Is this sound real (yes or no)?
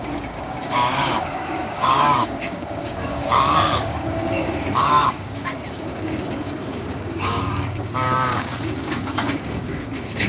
no